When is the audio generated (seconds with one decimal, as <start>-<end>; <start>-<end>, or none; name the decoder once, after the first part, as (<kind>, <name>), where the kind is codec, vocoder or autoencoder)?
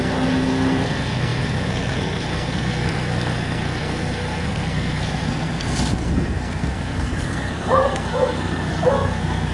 0.0-9.5 (codec, SNAC)